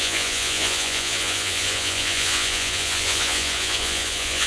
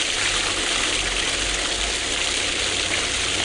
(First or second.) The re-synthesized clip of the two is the first